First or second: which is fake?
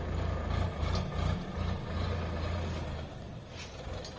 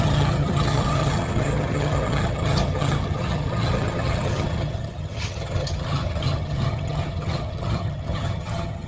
second